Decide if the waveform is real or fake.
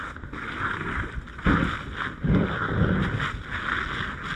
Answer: real